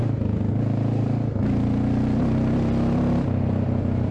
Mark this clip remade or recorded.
recorded